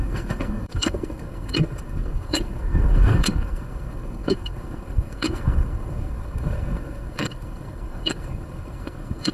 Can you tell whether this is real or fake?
fake